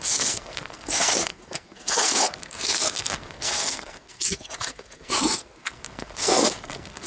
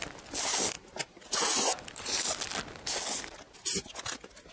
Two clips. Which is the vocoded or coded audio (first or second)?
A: first